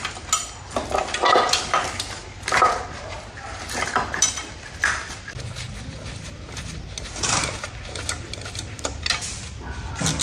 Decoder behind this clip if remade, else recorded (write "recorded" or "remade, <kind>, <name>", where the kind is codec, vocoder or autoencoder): recorded